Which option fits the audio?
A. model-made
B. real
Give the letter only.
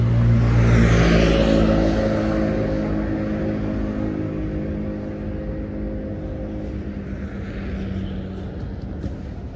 B